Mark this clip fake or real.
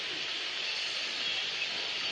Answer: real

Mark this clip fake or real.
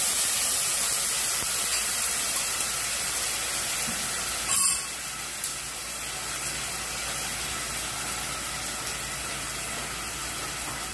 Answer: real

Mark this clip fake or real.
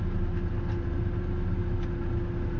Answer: real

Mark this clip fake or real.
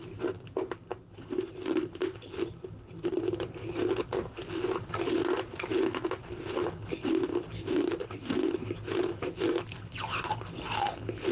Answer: real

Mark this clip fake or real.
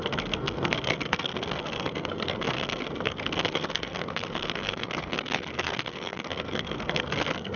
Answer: fake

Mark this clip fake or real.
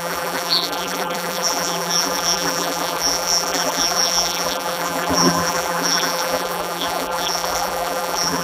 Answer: fake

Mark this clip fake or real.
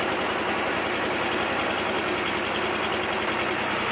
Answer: real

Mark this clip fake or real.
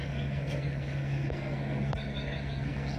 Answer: fake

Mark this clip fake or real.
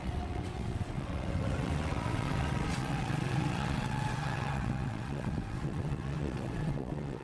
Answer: fake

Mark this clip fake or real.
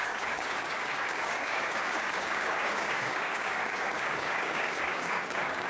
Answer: fake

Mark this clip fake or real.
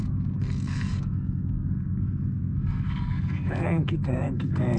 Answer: fake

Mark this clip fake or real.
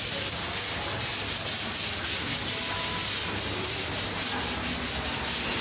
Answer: real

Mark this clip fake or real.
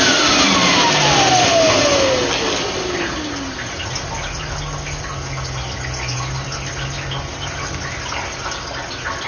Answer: real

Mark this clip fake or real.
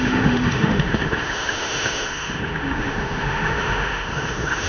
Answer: fake